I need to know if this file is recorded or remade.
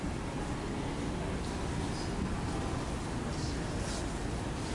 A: recorded